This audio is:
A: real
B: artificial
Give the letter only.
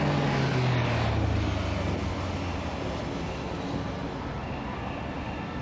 A